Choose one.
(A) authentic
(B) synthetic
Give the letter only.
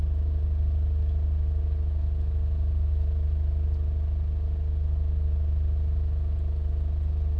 A